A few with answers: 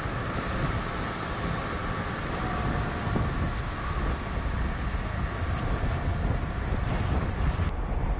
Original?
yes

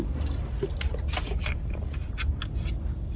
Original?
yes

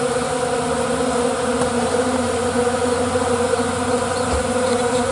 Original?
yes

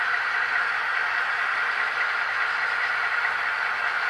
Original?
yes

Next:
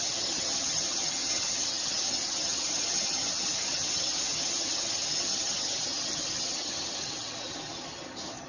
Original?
no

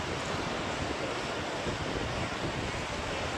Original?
yes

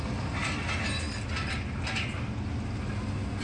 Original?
yes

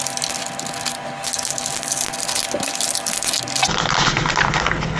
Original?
yes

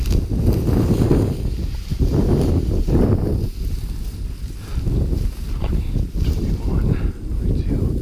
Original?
yes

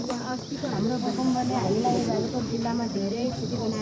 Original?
no